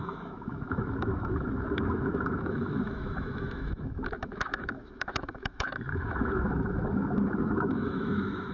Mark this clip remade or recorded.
remade